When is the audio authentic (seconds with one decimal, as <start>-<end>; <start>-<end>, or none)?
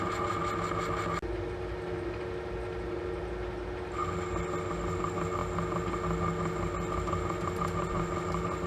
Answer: 0.0-8.7